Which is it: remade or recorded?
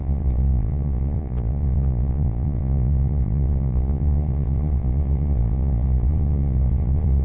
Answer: remade